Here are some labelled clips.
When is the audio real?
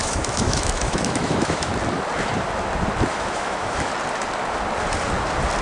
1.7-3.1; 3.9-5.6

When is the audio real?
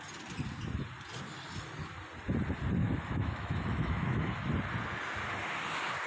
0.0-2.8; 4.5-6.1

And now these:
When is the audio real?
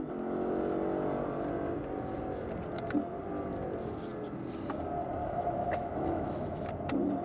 0.0-5.2; 6.6-7.2